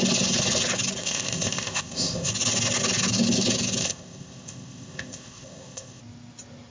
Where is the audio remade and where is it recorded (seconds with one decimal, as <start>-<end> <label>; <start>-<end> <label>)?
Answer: 0.0-1.0 recorded; 1.0-2.3 remade; 2.3-3.8 recorded; 3.8-6.0 remade; 6.0-6.7 recorded